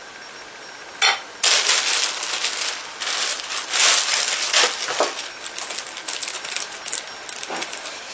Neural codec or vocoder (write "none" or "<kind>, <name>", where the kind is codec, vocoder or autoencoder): none